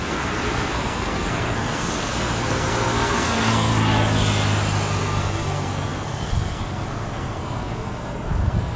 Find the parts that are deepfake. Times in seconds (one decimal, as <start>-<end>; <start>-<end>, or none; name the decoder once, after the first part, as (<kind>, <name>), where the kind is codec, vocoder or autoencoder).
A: 0.0-3.7 (codec, SNAC); 5.0-8.8